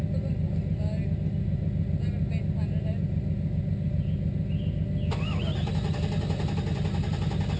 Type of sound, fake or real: real